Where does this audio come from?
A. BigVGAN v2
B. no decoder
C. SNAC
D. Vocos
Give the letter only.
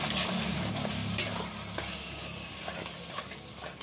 B